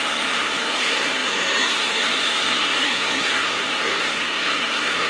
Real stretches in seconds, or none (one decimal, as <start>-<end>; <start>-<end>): none